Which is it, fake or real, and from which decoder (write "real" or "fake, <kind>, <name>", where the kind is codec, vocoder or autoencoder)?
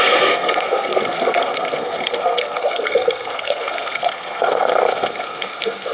fake, codec, SNAC